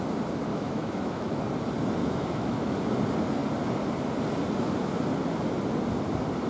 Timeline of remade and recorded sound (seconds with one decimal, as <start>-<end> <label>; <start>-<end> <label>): 0.0-0.5 recorded; 0.5-1.4 remade; 1.4-2.0 recorded; 2.0-2.8 remade; 2.8-6.5 recorded